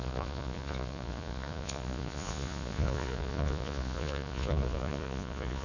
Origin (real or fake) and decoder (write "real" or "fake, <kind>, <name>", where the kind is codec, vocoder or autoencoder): fake, vocoder, Vocos